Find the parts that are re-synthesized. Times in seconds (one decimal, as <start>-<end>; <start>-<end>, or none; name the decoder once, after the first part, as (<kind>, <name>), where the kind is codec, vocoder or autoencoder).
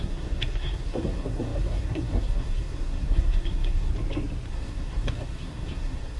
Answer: 0.0-3.9 (codec, SNAC); 4.5-6.2